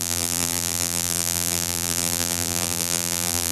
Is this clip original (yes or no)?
no